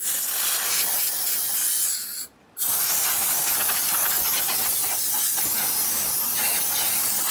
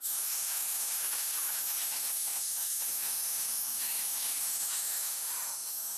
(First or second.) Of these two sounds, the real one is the first